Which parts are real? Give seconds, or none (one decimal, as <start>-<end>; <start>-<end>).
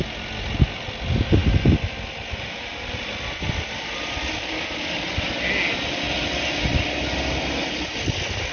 0.0-8.5